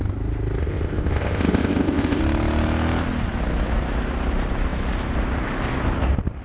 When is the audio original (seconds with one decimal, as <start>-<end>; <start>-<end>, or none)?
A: 0.0-0.6; 2.2-6.4